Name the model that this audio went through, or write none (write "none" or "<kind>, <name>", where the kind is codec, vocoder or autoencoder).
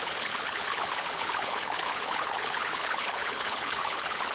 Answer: codec, HILCodec